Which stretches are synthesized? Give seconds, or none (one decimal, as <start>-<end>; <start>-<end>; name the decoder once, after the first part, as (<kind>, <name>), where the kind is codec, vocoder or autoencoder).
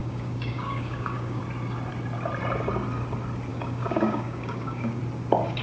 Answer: 0.0-1.4 (codec, DAC); 3.5-5.0